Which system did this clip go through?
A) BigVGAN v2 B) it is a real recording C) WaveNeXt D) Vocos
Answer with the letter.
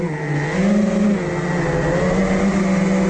B